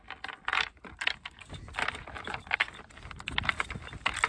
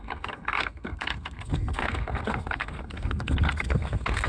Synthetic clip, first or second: second